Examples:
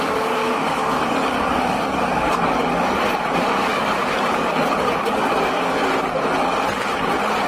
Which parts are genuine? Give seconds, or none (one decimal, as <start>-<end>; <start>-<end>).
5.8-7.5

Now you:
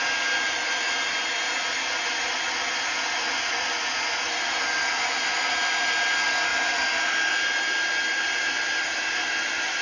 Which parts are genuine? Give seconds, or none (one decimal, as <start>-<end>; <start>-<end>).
0.0-9.8

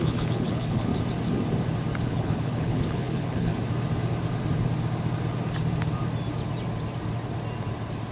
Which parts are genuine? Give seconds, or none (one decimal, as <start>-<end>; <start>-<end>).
0.9-2.0; 3.5-8.1